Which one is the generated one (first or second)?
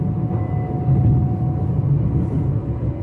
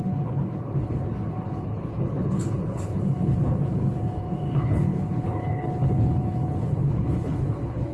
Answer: second